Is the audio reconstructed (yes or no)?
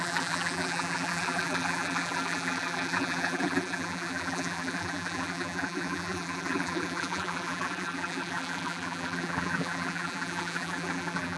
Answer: yes